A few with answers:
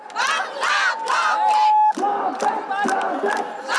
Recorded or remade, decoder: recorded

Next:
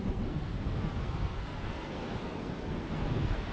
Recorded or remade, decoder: remade, codec, SNAC